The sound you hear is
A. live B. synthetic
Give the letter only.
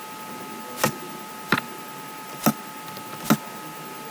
A